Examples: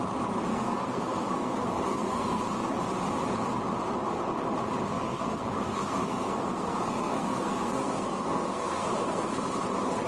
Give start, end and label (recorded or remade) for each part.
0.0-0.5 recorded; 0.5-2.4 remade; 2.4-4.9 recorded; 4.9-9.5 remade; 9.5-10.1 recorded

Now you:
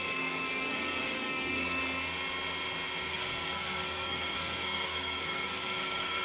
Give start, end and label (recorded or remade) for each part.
0.0-1.8 remade; 1.8-3.1 recorded; 3.1-6.2 remade

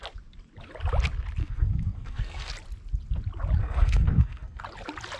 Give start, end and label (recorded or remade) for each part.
0.0-1.4 recorded; 1.4-2.5 remade; 2.5-3.6 recorded; 3.6-4.6 remade; 4.6-5.2 recorded

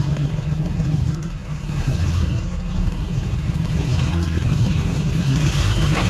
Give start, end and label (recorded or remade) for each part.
0.0-6.1 remade

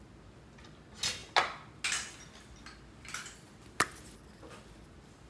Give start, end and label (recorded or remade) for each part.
0.0-5.3 recorded

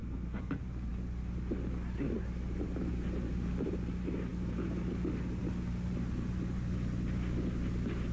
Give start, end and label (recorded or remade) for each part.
0.0-0.5 remade; 0.5-8.1 recorded

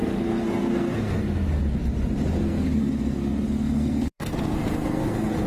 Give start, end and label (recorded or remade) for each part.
0.0-1.6 remade; 1.6-2.4 recorded; 2.4-5.5 remade